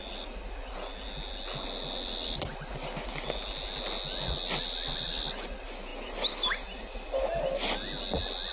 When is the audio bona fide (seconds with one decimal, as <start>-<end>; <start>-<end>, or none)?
0.0-8.5